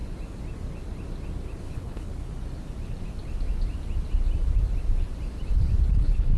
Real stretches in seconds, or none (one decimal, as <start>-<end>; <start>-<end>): 0.0-1.6; 2.1-5.9